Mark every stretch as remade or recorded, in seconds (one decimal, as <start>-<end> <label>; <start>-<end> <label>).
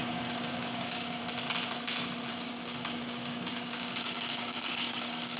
0.0-1.2 remade; 1.2-2.3 recorded; 2.3-5.4 remade